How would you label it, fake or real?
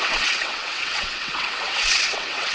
fake